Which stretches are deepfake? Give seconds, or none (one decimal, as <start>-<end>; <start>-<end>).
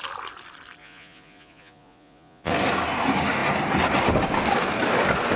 0.8-2.5